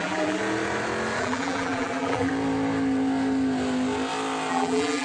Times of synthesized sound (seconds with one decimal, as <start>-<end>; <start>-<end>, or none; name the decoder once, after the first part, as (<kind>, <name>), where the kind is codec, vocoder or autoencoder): 0.0-0.4 (vocoder, BigVGAN v2); 1.2-2.3; 4.5-5.0